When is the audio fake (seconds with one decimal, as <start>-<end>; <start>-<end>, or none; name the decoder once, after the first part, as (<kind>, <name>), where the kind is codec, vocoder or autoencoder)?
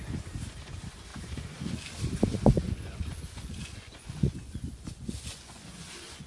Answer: 1.1-1.8 (vocoder, Vocos); 2.3-6.3